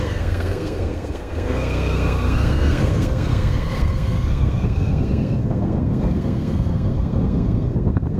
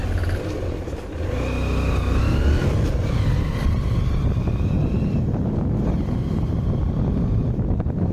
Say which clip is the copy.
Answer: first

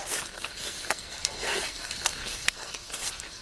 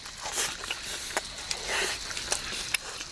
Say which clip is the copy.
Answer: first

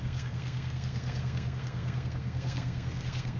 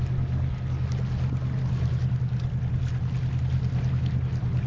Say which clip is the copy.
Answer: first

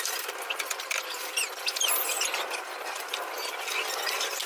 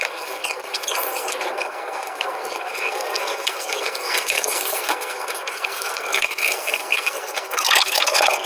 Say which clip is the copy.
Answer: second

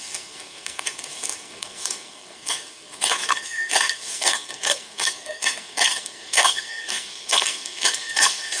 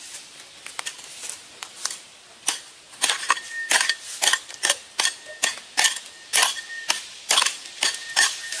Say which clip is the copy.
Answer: first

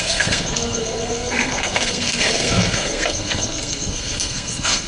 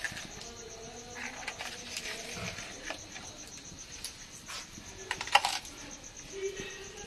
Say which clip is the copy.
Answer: first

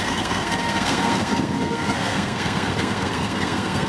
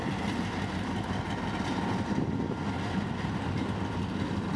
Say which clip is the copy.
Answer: first